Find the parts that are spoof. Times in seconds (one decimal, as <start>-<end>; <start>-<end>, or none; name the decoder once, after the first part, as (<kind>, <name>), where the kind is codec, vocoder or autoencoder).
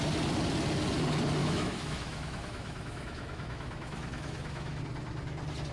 1.4-4.8 (autoencoder, DAC-VAE)